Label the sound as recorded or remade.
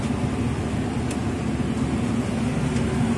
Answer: recorded